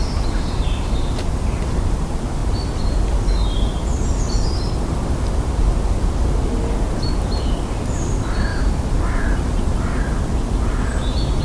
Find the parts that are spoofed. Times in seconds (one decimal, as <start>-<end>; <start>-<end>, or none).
8.5-9.2